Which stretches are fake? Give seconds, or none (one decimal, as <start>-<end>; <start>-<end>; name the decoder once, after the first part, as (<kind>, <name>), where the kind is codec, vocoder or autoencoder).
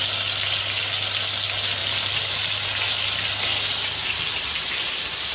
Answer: none